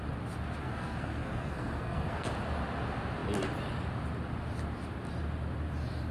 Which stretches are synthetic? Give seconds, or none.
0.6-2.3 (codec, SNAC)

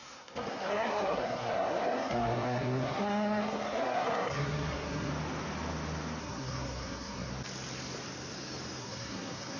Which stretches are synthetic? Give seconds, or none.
0.0-5.1 (codec, SNAC); 6.2-7.3; 8.8-9.6

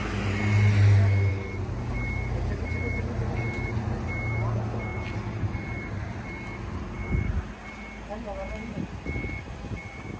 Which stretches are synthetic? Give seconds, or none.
none

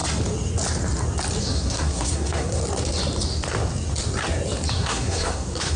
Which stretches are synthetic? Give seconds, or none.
1.4-2.6 (codec, SNAC); 4.7-5.8

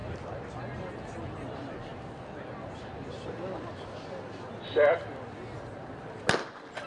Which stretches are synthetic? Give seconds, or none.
none

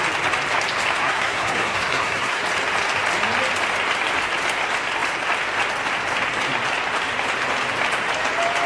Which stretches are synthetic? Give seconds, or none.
1.0-2.4 (codec, SNAC)

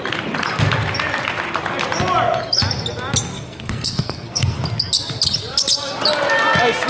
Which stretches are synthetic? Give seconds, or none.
3.3-4.6 (codec, SNAC)

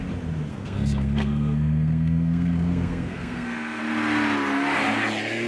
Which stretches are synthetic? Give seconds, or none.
0.5-3.8 (codec, SNAC)